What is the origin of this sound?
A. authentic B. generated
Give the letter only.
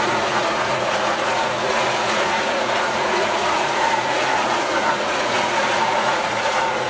B